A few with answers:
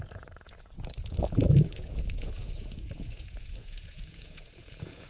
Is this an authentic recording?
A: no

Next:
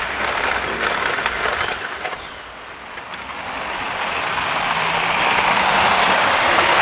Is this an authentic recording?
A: yes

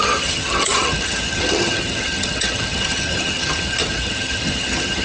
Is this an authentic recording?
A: no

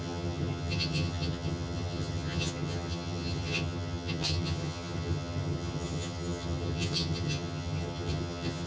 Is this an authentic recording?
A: no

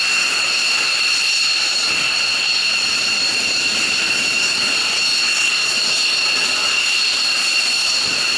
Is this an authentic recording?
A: yes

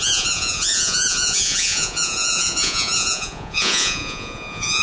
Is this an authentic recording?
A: no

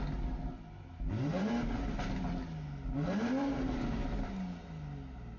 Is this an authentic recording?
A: yes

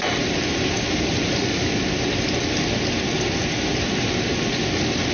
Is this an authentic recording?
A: yes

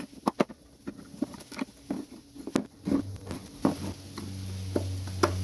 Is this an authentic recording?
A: yes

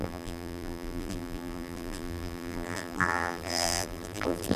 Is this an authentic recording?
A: no